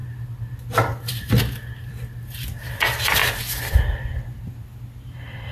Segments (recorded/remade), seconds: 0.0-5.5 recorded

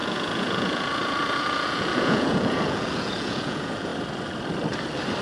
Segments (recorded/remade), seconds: 0.0-3.9 remade; 3.9-5.2 recorded

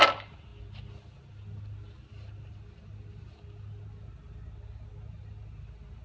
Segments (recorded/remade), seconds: 0.0-6.0 recorded

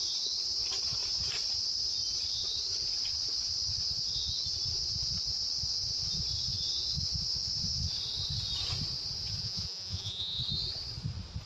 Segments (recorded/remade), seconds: 0.0-9.4 recorded; 9.4-10.4 remade; 10.4-11.5 recorded

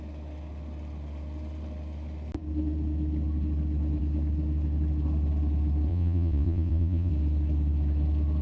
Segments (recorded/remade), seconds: 0.0-5.9 recorded; 5.9-7.1 remade; 7.1-8.4 recorded

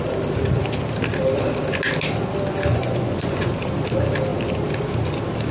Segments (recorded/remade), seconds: 0.0-2.7 recorded; 2.7-3.5 remade; 3.5-5.5 recorded